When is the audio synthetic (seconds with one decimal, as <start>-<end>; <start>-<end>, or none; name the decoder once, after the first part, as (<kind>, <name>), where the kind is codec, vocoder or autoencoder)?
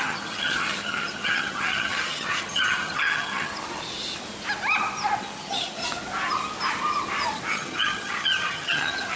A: 0.0-3.5 (vocoder, HiFi-GAN); 5.2-5.8; 7.5-9.2